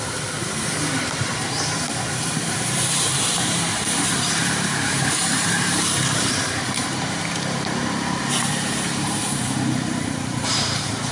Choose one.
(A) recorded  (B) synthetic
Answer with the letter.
B